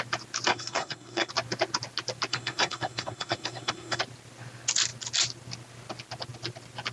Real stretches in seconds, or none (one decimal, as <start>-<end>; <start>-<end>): 0.0-0.5; 1.3-2.3; 4.0-6.9

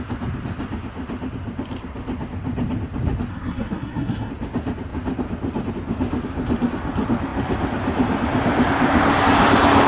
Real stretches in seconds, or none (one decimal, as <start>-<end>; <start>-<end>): 0.0-3.3; 4.3-9.9

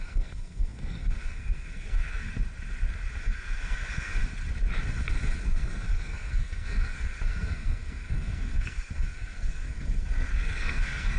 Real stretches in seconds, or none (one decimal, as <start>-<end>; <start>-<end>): 2.3-3.2; 4.2-5.4

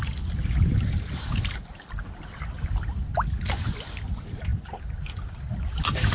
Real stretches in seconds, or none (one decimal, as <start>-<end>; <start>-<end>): 0.0-6.1

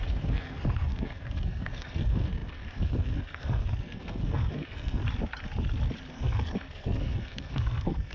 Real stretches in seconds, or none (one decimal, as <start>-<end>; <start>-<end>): 5.0-6.1